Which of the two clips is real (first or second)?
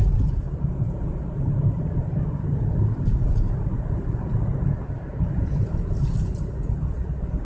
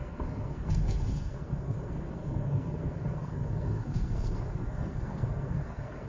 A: first